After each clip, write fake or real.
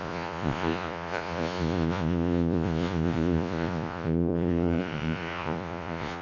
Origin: fake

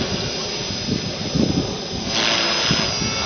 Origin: real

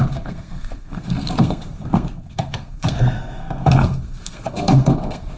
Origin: fake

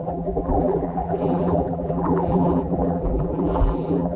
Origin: fake